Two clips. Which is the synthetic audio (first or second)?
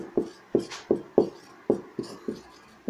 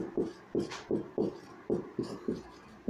second